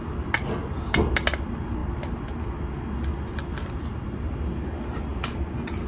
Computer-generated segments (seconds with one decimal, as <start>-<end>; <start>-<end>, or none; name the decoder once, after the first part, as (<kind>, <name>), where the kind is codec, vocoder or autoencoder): 5.1-5.9 (vocoder, BigVGAN v2)